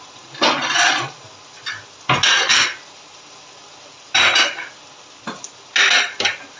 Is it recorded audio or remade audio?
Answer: recorded